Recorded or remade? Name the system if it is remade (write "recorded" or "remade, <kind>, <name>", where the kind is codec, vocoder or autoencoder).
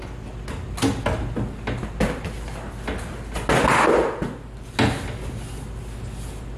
recorded